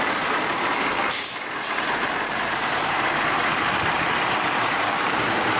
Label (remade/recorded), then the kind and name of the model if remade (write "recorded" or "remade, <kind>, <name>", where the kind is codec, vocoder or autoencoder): remade, vocoder, BigVGAN v2